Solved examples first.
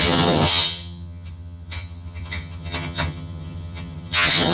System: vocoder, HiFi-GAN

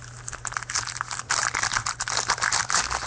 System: none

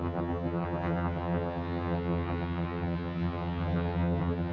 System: vocoder, HiFi-GAN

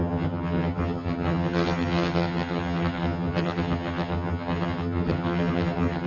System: vocoder, HiFi-GAN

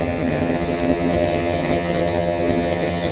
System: vocoder, HiFi-GAN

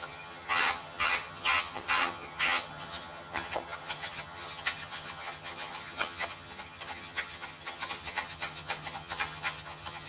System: vocoder, HiFi-GAN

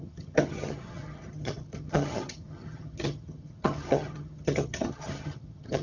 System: vocoder, HiFi-GAN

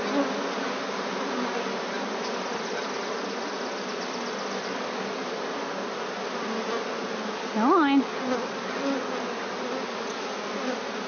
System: none